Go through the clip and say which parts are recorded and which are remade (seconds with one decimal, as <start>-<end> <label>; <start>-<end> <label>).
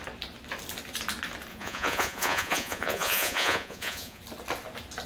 0.0-1.5 recorded; 1.5-4.2 remade; 4.2-5.1 recorded